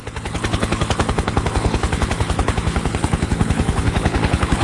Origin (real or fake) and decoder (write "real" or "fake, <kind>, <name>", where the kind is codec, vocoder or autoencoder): fake, codec, HILCodec